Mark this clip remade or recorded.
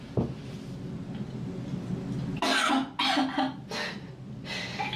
recorded